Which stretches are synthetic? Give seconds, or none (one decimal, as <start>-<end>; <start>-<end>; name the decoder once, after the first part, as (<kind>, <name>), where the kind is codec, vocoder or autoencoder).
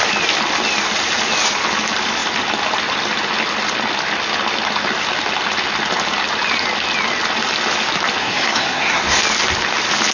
8.2-9.2 (codec, SNAC)